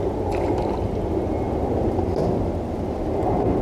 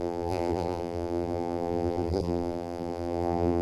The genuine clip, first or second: first